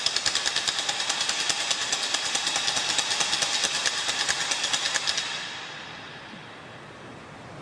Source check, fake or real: real